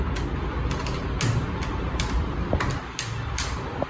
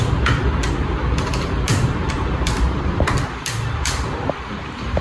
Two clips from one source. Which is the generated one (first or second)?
second